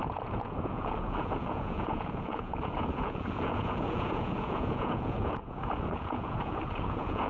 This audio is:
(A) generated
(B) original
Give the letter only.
A